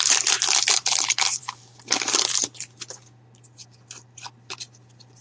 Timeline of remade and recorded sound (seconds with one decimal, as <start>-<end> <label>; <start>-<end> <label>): 0.0-5.2 recorded